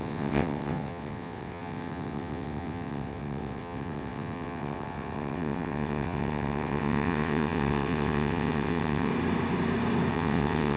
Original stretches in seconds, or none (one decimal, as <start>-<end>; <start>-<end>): 9.1-10.1